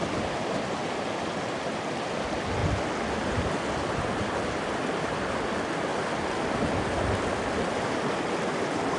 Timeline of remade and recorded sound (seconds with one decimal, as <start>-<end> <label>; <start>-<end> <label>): 0.0-9.0 recorded